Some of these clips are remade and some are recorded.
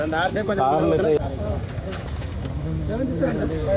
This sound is remade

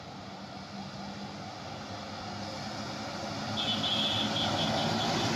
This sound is recorded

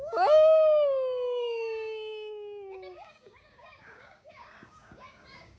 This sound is remade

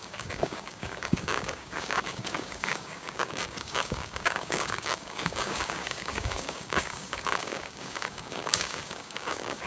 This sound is remade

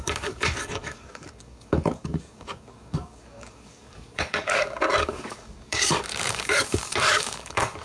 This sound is remade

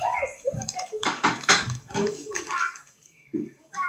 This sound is remade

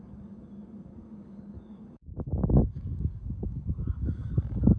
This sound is remade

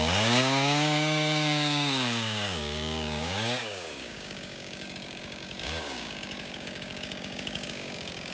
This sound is remade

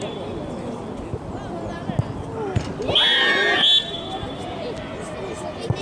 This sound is recorded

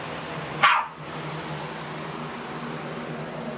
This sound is recorded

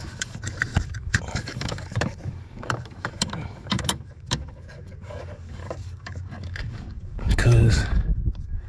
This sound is remade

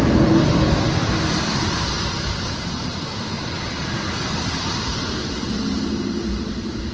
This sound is recorded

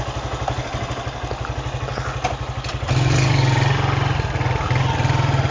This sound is recorded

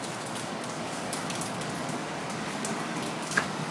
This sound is remade